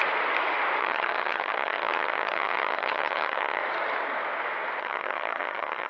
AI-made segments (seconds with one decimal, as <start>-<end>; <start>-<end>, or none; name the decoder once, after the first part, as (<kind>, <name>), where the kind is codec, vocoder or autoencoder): 0.8-3.6 (vocoder, HiFi-GAN); 4.8-5.9